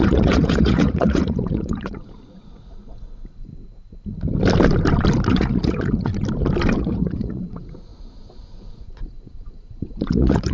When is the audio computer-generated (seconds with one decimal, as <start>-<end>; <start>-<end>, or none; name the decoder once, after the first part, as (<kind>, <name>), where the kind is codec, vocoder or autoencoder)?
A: 0.0-3.5 (vocoder, Vocos); 5.3-6.1; 6.8-10.5